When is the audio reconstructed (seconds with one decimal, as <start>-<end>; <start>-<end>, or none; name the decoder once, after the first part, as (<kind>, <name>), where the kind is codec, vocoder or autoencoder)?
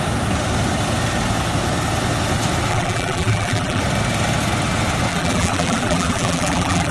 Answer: 2.7-3.8 (vocoder, BigVGAN v2); 5.1-6.9